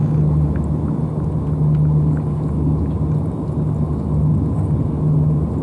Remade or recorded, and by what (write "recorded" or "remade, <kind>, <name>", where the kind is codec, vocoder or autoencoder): recorded